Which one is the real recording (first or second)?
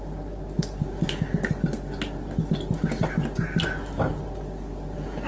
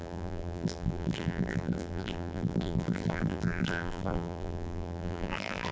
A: first